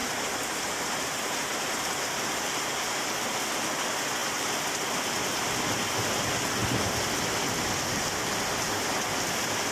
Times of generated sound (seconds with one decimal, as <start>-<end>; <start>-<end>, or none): 0.0-2.4

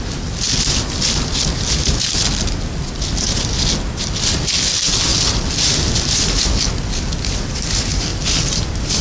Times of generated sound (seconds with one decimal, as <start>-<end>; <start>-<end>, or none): none

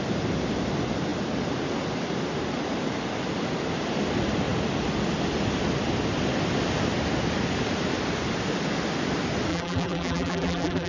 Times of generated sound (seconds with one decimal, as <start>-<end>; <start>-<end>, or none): 9.5-10.9

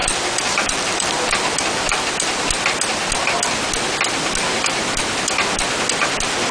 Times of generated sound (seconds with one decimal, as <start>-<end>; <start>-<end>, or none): 0.0-1.4

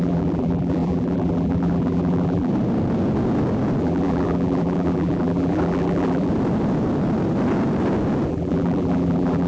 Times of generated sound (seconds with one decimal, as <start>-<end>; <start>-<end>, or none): 0.0-2.5; 3.8-6.3; 8.3-9.5